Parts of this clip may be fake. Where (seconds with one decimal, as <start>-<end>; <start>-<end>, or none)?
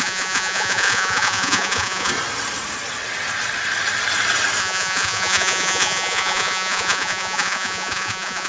0.0-2.1; 4.6-8.5